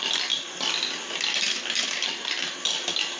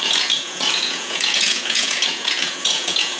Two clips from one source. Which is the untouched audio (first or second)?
first